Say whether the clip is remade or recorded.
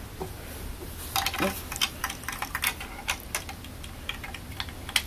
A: recorded